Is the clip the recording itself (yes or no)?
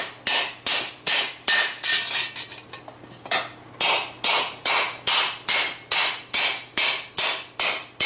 yes